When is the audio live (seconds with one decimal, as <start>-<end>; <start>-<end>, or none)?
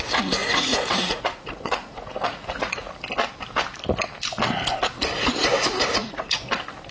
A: 0.0-0.4; 2.9-6.0; 6.5-6.9